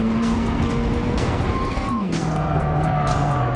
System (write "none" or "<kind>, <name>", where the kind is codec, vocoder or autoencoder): codec, SNAC